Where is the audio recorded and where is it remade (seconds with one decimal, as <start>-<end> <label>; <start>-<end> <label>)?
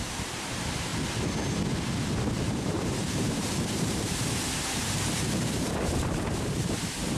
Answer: 0.0-0.9 remade; 0.9-2.5 recorded; 2.5-7.2 remade